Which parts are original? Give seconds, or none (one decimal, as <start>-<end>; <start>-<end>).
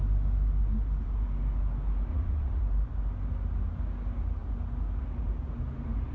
0.0-2.1; 2.6-6.1